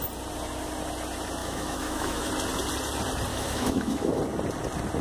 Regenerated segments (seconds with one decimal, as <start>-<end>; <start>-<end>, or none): 1.4-2.3; 3.3-4.2